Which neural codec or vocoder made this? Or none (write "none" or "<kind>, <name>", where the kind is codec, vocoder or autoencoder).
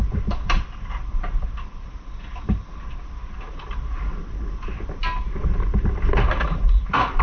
none